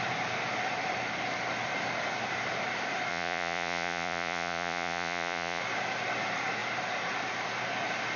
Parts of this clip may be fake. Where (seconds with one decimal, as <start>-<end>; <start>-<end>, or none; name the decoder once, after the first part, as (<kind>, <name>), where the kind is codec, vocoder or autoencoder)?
3.1-5.6 (vocoder, Vocos)